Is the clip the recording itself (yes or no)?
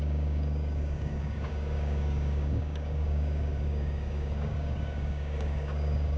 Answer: no